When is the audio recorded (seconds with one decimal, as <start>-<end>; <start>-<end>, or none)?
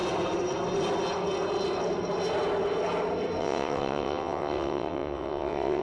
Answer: 0.0-3.4